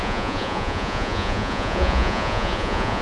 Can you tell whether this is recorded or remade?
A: remade